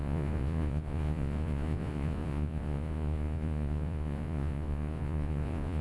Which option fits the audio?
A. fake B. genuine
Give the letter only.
A